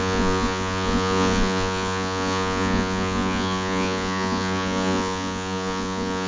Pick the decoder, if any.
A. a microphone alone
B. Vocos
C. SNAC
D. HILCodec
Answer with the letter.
B